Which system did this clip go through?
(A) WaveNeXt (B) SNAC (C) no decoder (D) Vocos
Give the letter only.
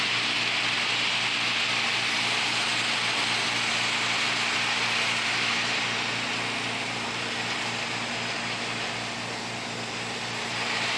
C